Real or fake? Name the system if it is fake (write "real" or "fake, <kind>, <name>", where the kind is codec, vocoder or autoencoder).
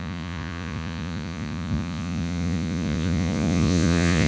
fake, vocoder, Vocos